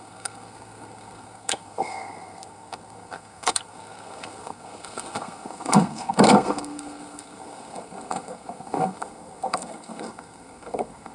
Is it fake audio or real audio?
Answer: fake